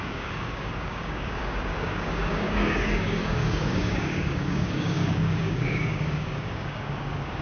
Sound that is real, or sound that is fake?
fake